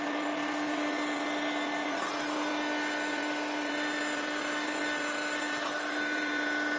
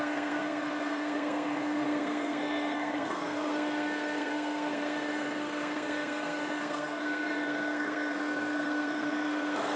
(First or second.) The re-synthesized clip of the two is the second